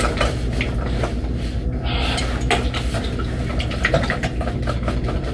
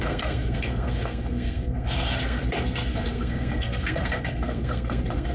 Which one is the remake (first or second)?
second